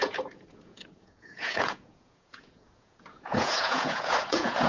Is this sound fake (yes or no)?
yes